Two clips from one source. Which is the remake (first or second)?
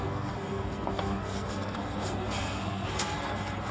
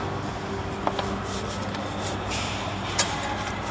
first